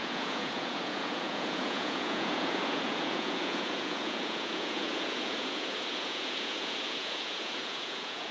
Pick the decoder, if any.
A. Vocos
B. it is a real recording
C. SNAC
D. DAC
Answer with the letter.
A